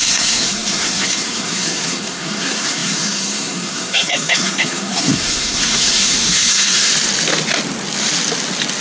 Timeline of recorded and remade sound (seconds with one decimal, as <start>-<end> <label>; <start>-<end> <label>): 0.0-6.9 remade; 6.9-8.8 recorded